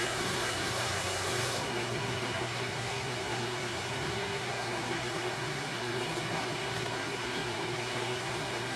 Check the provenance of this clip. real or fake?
fake